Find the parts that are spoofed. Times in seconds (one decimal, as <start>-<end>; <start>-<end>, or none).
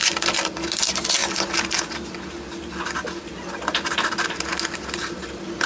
none